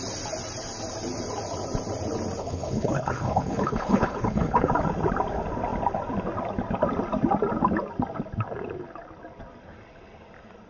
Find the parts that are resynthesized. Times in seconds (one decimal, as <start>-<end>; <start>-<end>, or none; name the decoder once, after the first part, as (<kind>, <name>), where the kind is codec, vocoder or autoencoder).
2.4-4.7 (codec, HILCodec)